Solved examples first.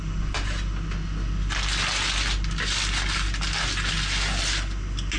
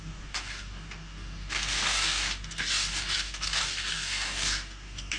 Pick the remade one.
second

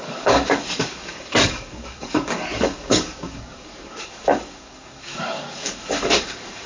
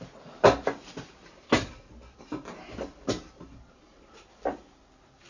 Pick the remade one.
first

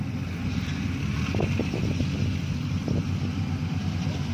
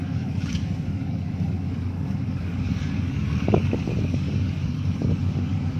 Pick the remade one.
second